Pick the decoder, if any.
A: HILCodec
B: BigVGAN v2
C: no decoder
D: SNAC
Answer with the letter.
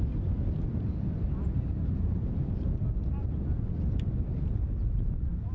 B